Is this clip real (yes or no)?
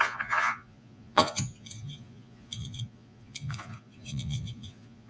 no